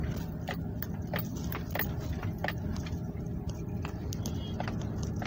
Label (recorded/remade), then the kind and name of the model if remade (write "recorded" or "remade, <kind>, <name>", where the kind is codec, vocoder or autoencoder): recorded